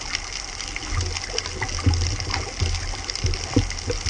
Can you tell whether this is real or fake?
real